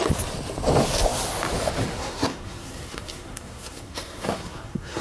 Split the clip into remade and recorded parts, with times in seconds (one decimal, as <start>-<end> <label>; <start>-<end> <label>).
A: 0.0-1.9 recorded; 1.9-5.0 remade

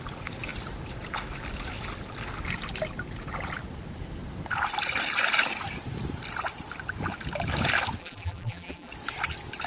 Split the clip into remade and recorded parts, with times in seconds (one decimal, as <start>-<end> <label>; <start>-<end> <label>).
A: 0.0-8.0 recorded; 8.0-8.9 remade; 8.9-9.7 recorded

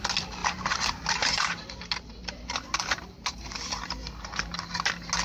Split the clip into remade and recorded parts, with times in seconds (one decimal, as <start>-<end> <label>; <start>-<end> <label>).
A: 0.0-0.4 recorded; 0.4-3.5 remade; 3.5-5.2 recorded

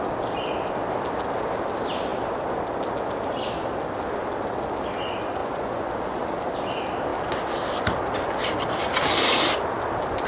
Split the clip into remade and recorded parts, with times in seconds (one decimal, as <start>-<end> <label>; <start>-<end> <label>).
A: 0.0-5.4 recorded; 5.4-5.9 remade; 5.9-10.3 recorded

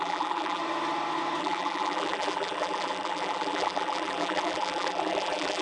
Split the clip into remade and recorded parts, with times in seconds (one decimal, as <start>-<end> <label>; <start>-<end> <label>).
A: 0.0-0.6 remade; 0.6-1.4 recorded; 1.4-5.6 remade

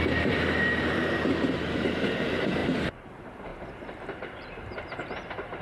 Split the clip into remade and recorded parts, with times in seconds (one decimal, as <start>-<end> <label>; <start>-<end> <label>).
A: 0.0-5.6 remade